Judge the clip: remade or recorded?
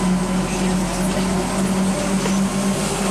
recorded